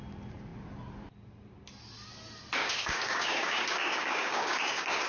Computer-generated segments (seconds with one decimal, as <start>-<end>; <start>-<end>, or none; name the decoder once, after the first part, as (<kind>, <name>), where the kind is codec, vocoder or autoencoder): 2.6-5.1 (codec, DAC)